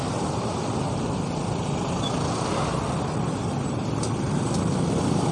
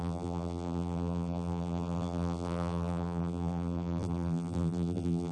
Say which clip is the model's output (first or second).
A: second